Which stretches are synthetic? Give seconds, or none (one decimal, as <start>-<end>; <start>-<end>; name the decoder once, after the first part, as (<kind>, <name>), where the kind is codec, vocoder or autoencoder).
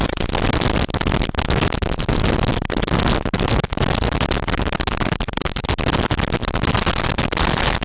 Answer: none